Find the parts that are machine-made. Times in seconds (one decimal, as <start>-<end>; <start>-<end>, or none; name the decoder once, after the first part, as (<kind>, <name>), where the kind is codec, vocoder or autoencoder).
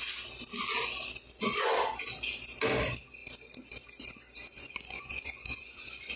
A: 4.5-6.2 (vocoder, Vocos)